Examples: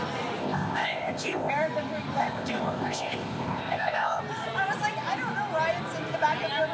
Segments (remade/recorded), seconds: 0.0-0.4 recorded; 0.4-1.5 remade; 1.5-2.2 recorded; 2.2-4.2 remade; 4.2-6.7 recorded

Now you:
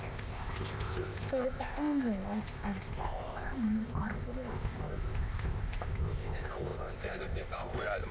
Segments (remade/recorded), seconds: 0.0-8.1 remade

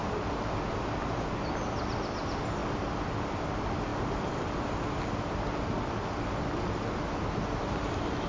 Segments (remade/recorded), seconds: 0.0-8.3 recorded

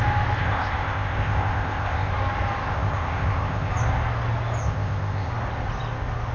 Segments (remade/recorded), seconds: 0.0-0.4 recorded; 0.4-2.1 remade; 2.1-2.7 recorded; 2.7-3.7 remade; 3.7-4.6 recorded; 4.6-5.3 remade; 5.3-6.3 recorded

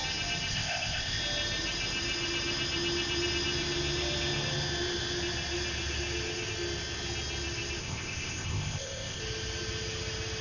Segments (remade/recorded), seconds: 0.0-0.5 recorded; 0.5-1.2 remade; 1.2-7.8 recorded; 7.8-9.2 remade; 9.2-10.4 recorded

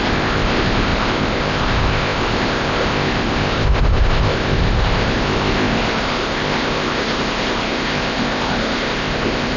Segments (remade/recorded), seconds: 0.0-9.6 remade

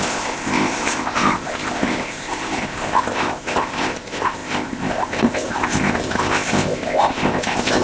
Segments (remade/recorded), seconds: 0.0-7.8 remade